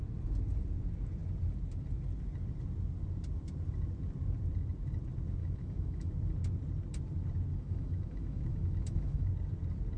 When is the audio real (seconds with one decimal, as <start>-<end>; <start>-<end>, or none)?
0.0-5.4; 6.1-7.5; 9.3-10.0